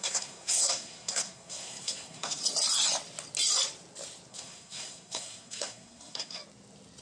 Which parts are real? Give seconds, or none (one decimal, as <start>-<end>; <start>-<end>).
2.4-4.3; 6.4-7.0